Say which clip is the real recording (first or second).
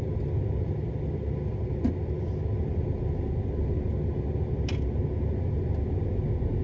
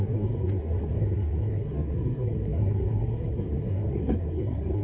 first